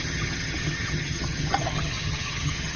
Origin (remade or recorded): remade